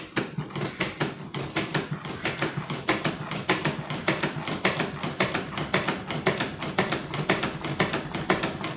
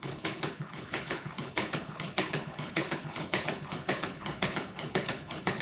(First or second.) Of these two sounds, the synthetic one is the second